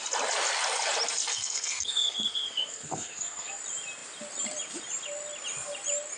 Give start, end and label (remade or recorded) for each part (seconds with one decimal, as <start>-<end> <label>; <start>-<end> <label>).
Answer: 0.0-1.3 recorded; 1.3-3.6 remade; 3.6-6.2 recorded